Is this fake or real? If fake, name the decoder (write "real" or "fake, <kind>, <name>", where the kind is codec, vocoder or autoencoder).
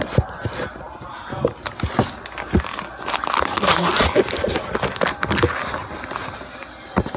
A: real